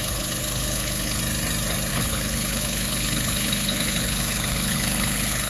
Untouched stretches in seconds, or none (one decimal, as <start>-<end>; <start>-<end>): 1.2-1.9